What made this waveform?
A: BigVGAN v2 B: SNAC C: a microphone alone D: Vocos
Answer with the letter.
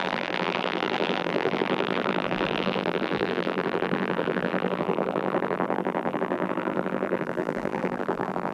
A